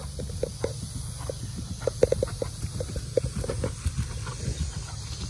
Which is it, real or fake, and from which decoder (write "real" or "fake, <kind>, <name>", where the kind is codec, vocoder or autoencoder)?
real